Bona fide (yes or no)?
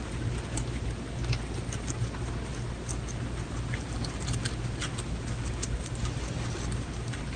yes